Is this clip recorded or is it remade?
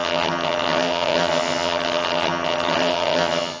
remade